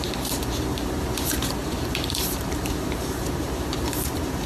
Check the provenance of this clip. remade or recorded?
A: remade